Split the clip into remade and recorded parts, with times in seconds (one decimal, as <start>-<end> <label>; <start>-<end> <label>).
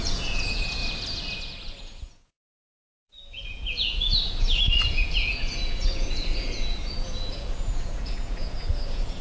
0.0-0.8 remade; 0.8-1.4 recorded; 1.4-9.2 remade